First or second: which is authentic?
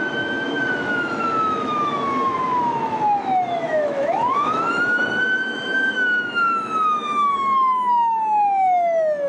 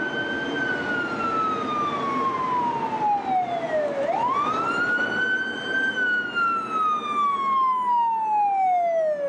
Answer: second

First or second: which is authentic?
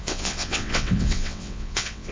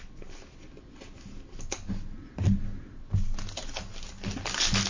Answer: second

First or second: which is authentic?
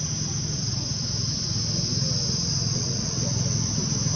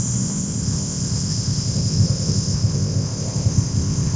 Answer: first